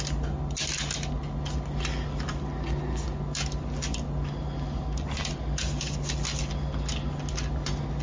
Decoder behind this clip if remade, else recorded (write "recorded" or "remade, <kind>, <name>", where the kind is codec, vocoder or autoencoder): recorded